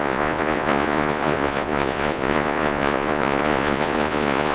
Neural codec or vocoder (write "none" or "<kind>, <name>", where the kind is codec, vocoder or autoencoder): vocoder, Vocos